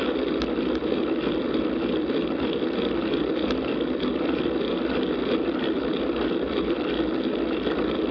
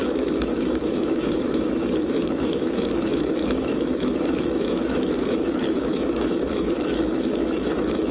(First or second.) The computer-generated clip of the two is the second